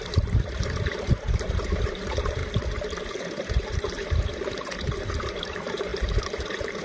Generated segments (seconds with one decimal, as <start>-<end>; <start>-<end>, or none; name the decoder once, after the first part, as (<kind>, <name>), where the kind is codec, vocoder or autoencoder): 0.0-2.4 (vocoder, BigVGAN v2); 3.1-6.8